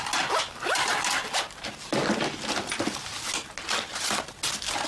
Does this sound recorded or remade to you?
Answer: recorded